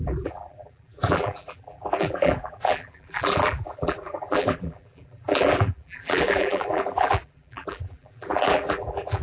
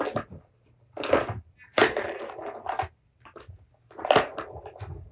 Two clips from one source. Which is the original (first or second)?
second